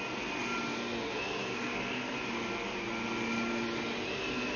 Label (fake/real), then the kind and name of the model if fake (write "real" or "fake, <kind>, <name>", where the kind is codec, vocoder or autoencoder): real